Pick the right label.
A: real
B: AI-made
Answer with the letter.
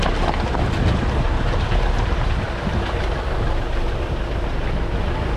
A